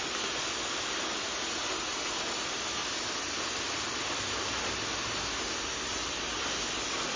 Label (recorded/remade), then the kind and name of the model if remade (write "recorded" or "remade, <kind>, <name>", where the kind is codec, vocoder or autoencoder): recorded